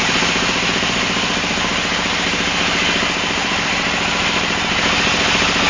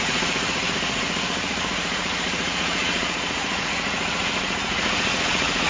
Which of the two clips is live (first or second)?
first